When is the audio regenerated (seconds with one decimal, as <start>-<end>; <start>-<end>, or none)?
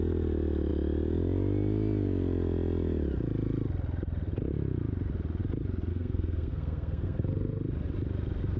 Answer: 5.9-7.6